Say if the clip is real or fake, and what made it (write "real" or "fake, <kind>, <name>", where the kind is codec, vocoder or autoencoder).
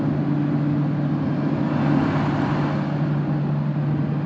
real